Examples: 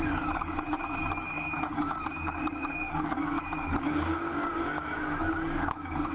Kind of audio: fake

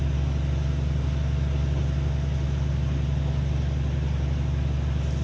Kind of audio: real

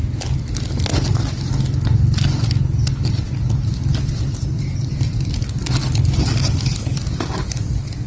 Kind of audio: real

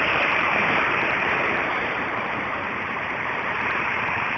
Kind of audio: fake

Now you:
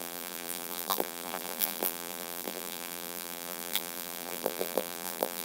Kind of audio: fake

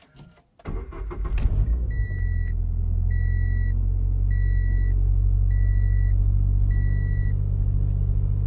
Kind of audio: real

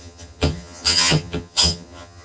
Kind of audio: fake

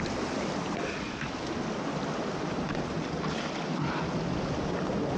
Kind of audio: real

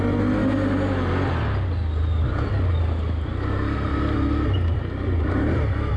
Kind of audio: real